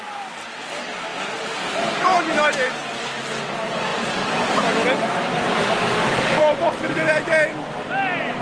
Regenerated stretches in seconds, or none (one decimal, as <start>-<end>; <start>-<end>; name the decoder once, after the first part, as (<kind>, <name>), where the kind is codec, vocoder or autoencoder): none